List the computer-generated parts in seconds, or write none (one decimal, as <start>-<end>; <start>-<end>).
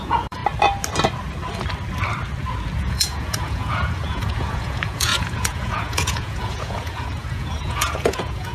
0.0-0.4; 2.8-8.5